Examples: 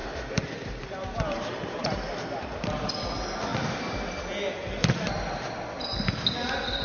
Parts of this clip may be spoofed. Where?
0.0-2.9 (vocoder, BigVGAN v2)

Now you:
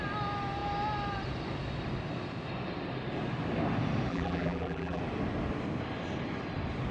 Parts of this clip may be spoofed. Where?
4.1-5.0 (vocoder, BigVGAN v2)

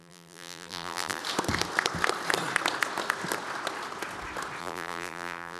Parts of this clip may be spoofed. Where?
0.0-1.2 (vocoder, BigVGAN v2); 4.6-5.6

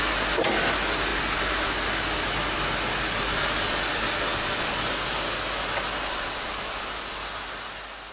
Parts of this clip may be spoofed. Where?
none

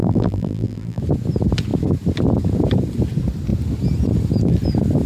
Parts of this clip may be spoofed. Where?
0.0-1.0 (vocoder, BigVGAN v2)

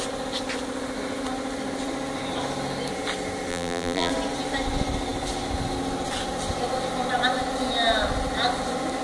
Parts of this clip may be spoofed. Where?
3.5-4.1 (vocoder, BigVGAN v2)